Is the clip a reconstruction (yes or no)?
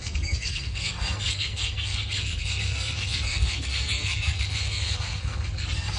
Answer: yes